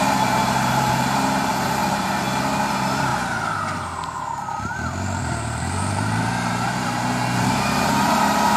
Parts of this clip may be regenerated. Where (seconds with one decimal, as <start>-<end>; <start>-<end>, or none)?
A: 0.0-1.8; 2.7-3.1; 5.2-8.6